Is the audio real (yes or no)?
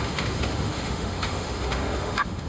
no